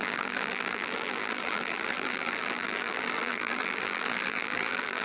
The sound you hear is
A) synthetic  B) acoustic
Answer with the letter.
A